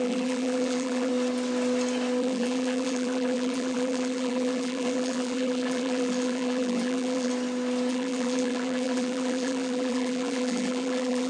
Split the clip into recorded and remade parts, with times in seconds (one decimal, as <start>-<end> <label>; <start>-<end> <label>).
0.0-1.1 remade; 1.1-2.2 recorded; 2.2-7.3 remade; 7.3-7.9 recorded; 7.9-11.3 remade